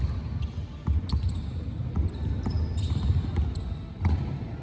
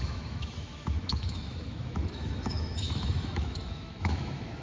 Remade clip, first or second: second